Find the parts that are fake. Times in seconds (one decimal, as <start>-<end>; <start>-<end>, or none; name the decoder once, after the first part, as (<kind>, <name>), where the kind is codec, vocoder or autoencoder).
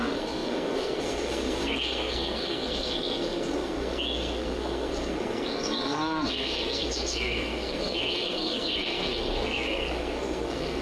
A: 0.0-10.8 (codec, SNAC)